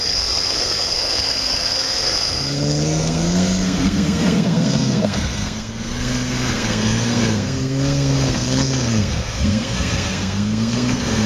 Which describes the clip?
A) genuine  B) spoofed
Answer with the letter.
B